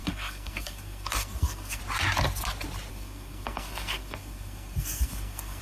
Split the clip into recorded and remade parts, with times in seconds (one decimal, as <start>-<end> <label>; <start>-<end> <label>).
0.0-1.8 remade; 1.8-2.9 recorded; 2.9-5.6 remade